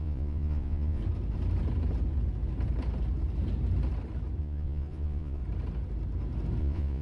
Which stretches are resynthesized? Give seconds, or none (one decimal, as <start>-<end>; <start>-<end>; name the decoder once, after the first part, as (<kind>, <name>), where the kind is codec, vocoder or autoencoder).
0.0-1.0 (vocoder, Vocos); 4.4-5.4; 6.6-7.0